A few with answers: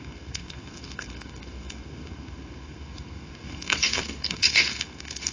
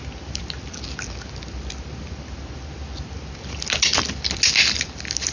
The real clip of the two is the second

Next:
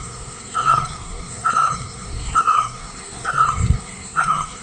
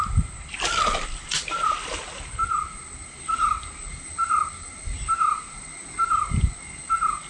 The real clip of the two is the second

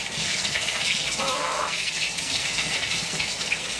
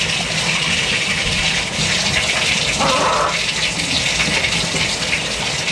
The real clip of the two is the second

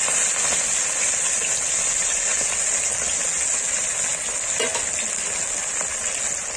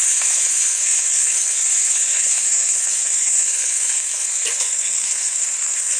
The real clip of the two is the first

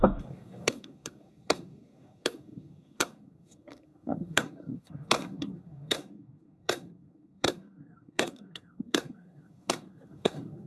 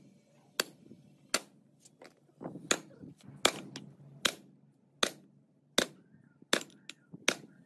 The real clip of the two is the second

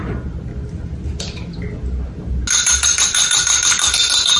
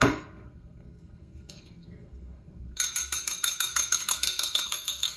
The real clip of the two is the first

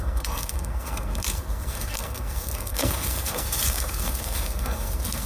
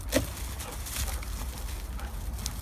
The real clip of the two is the second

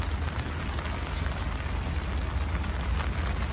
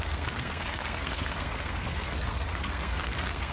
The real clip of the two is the first